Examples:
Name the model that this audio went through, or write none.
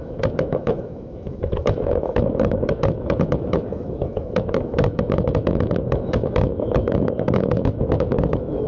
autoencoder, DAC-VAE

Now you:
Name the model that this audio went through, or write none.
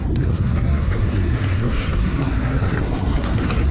codec, SNAC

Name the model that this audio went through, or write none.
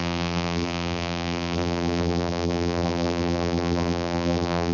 vocoder, BigVGAN v2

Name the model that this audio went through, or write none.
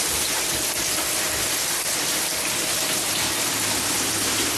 vocoder, BigVGAN v2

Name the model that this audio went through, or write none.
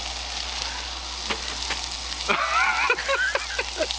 none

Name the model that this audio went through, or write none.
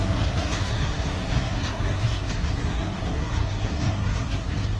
codec, SNAC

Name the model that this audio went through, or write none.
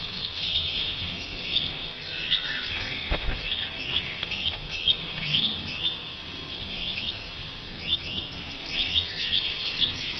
codec, SNAC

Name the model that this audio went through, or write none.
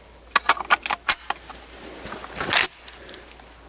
none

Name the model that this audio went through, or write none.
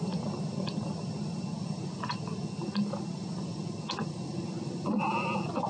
none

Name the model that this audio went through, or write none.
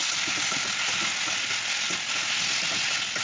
none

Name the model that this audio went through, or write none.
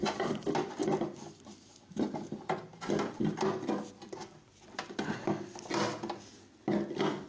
none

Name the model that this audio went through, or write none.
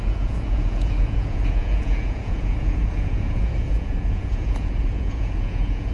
vocoder, Vocos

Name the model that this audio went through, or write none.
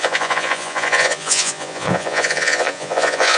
vocoder, Vocos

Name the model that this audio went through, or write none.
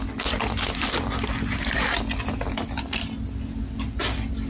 none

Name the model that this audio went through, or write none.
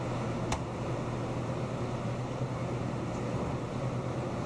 none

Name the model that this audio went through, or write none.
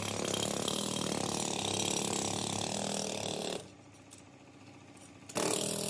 none